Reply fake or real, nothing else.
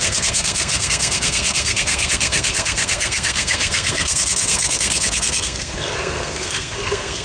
fake